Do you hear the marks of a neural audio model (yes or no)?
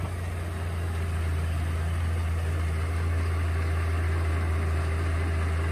no